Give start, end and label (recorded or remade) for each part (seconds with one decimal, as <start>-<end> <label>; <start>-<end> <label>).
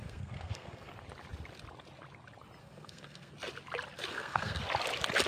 0.0-0.9 remade; 0.9-2.6 recorded; 2.6-3.3 remade; 3.3-4.1 recorded; 4.1-4.6 remade; 4.6-5.3 recorded